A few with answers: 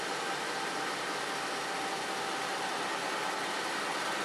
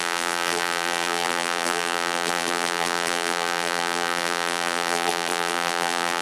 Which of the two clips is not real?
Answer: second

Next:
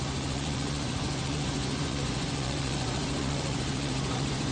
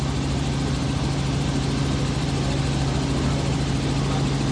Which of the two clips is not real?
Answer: first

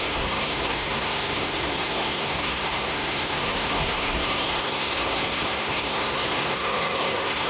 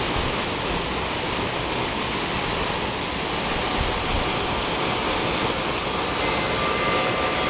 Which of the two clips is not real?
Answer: first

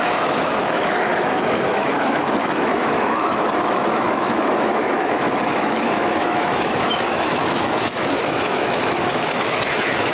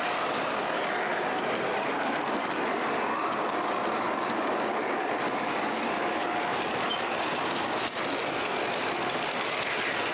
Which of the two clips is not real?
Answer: first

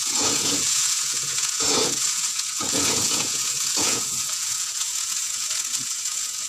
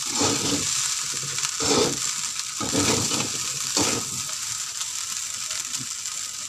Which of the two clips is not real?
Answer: first